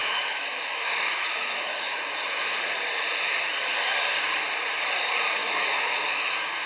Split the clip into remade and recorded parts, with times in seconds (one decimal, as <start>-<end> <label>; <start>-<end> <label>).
0.0-2.4 remade; 2.4-5.4 recorded; 5.4-6.3 remade; 6.3-6.7 recorded

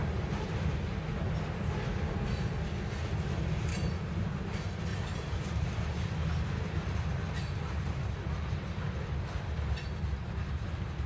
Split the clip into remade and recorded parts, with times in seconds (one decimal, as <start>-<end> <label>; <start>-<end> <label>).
0.0-3.7 recorded; 3.7-4.3 remade; 4.3-4.9 recorded; 4.9-8.1 remade; 8.1-11.1 recorded

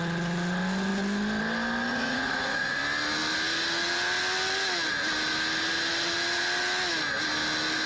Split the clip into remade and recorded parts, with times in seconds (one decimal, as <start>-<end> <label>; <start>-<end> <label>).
0.0-1.9 recorded; 1.9-2.8 remade; 2.8-7.9 recorded

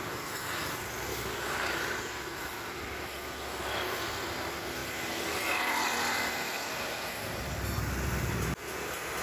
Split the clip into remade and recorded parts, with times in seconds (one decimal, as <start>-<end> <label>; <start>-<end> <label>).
0.0-1.1 recorded; 1.1-1.7 remade; 1.7-9.2 recorded

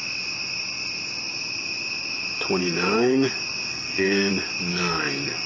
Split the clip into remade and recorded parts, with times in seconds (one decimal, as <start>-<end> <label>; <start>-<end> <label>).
0.0-2.6 recorded; 2.6-3.3 remade; 3.3-3.7 recorded; 3.7-4.3 remade; 4.3-4.7 recorded; 4.7-5.5 remade

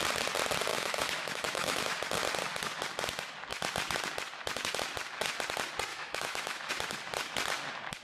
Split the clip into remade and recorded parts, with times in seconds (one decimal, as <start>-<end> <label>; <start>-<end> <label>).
0.0-0.7 recorded; 0.7-1.9 remade; 1.9-5.9 recorded; 5.9-6.7 remade; 6.7-8.0 recorded

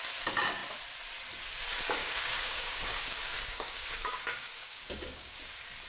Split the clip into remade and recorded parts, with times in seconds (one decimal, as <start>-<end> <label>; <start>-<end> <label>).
0.0-2.0 recorded; 2.0-5.5 remade; 5.5-5.9 recorded

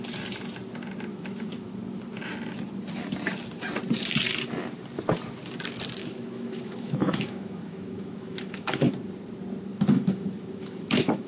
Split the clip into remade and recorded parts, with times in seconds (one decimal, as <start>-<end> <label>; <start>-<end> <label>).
0.0-1.1 recorded; 1.1-1.7 remade; 1.7-6.0 recorded; 6.0-8.9 remade; 8.9-9.7 recorded; 9.7-11.3 remade